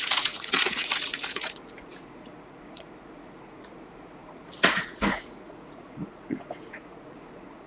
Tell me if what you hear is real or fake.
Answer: fake